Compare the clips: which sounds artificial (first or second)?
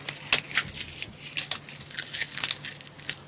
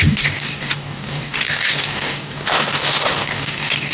second